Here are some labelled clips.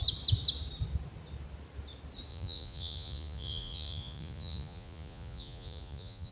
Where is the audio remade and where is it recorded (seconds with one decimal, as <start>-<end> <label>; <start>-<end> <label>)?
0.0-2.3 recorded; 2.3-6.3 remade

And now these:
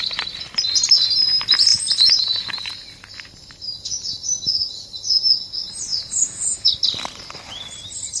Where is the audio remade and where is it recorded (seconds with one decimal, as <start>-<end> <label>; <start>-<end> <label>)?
0.0-1.7 recorded; 1.7-2.7 remade; 2.7-5.9 recorded; 5.9-6.7 remade; 6.7-8.2 recorded

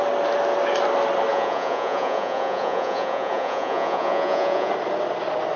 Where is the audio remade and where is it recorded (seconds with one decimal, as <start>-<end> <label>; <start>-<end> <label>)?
0.0-1.3 recorded; 1.3-4.7 remade; 4.7-5.6 recorded

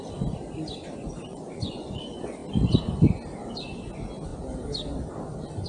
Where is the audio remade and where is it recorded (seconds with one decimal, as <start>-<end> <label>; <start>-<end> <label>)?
0.0-1.3 recorded; 1.3-2.0 remade; 2.0-5.7 recorded